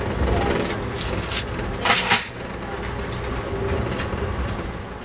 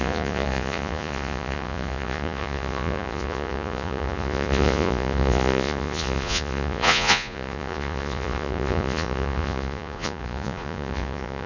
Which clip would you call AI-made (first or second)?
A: second